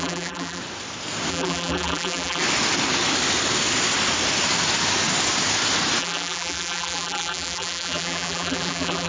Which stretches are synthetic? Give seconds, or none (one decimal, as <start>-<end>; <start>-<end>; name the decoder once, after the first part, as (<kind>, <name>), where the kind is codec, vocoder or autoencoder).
0.0-0.6 (vocoder, BigVGAN v2); 1.3-2.4; 6.0-9.1